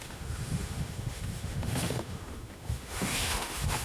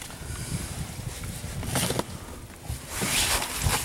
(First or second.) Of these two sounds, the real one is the second